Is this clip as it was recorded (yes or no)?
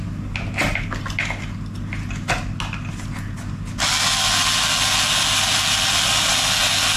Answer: yes